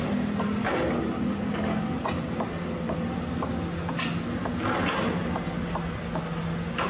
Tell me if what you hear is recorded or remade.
recorded